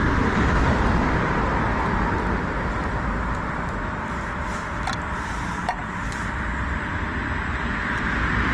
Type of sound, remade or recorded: recorded